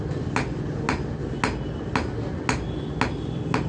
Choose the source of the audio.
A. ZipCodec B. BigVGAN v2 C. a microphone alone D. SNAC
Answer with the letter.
C